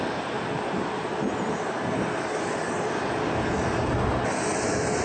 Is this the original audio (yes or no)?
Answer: yes